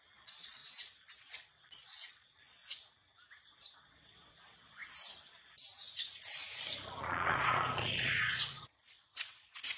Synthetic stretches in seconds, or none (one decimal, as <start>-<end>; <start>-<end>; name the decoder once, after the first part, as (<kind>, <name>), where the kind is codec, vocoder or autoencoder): 0.0-0.6 (vocoder, Vocos); 1.2-2.6; 3.8-4.8; 7.0-9.8